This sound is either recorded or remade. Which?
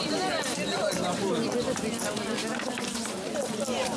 recorded